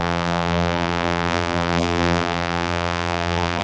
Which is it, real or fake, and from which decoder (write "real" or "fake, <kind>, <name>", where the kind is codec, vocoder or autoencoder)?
fake, vocoder, BigVGAN v2